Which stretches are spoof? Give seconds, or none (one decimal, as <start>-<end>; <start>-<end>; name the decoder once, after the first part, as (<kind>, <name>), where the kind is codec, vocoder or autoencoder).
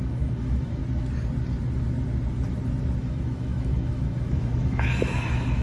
0.0-0.8 (autoencoder, DAC-VAE); 3.0-5.6